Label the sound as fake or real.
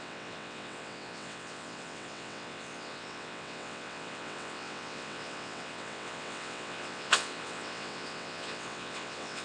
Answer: fake